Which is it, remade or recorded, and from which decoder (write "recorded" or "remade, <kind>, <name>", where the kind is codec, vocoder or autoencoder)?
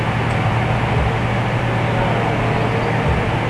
recorded